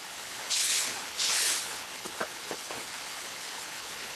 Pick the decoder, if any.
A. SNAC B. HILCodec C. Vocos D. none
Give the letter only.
B